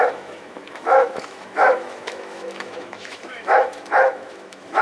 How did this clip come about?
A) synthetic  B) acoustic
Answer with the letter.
A